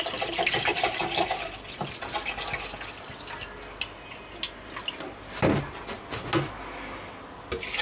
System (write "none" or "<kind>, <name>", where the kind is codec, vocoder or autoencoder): none